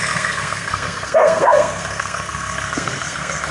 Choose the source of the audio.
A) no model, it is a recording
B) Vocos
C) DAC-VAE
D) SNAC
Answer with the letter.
D